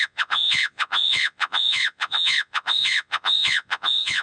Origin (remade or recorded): remade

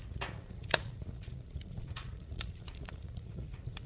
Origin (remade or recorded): remade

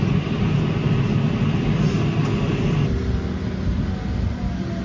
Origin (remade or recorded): recorded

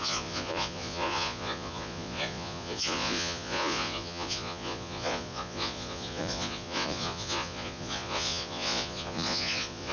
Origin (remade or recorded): remade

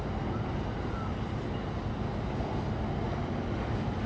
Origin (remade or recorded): recorded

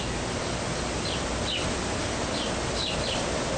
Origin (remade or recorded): recorded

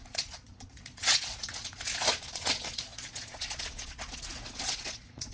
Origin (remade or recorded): remade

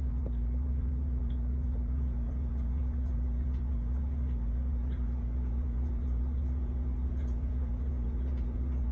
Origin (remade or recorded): remade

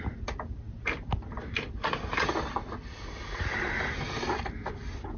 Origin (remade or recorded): recorded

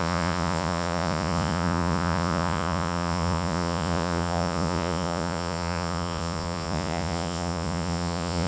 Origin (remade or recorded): remade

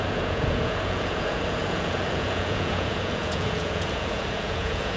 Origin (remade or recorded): remade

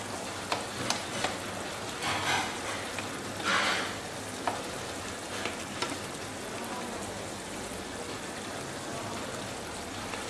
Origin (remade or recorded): recorded